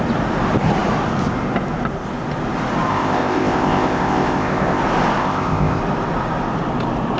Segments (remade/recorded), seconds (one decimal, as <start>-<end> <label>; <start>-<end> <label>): 0.0-2.9 recorded; 2.9-4.8 remade; 4.8-5.2 recorded; 5.2-5.8 remade; 5.8-7.2 recorded